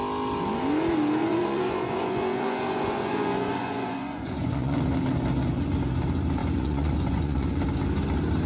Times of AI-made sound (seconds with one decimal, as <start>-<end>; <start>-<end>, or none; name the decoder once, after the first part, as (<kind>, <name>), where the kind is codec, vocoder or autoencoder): 1.2-4.8 (vocoder, Vocos); 6.4-7.6